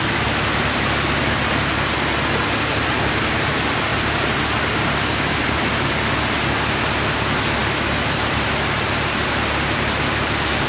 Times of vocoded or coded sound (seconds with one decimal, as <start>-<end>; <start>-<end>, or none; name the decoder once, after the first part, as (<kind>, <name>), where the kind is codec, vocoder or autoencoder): none